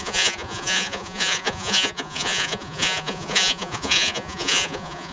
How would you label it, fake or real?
fake